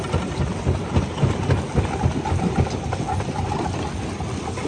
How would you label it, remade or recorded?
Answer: recorded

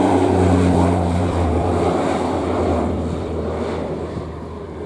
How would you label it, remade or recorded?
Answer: remade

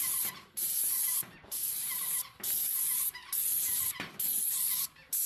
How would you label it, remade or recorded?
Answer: recorded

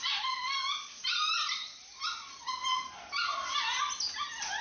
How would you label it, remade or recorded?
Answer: recorded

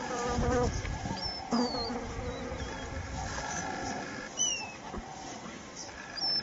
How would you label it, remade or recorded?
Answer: recorded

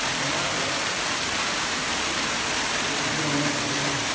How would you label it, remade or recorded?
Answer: recorded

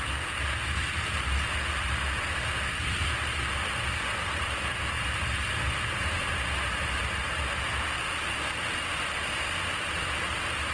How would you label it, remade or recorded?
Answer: recorded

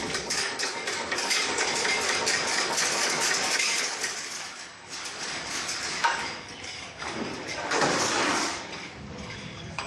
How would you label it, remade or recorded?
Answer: remade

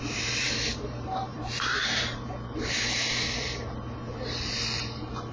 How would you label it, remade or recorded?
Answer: remade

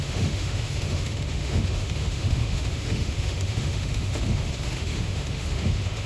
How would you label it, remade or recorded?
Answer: remade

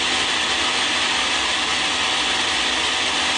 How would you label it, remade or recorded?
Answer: recorded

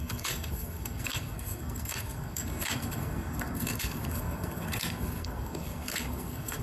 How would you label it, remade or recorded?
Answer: remade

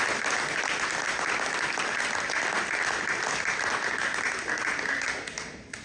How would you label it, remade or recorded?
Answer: recorded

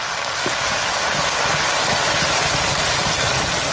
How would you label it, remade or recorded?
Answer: recorded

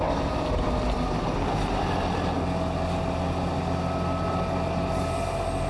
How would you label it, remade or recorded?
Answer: recorded